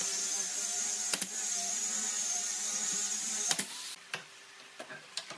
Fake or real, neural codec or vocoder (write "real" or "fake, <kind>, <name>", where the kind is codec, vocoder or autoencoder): fake, vocoder, BigVGAN v2